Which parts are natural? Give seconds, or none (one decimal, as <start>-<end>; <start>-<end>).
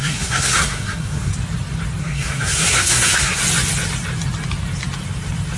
1.3-2.0; 3.4-5.6